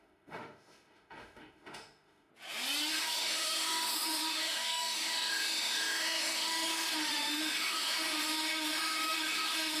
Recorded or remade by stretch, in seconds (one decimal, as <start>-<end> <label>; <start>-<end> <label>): 0.0-2.3 remade; 2.3-2.9 recorded; 2.9-9.8 remade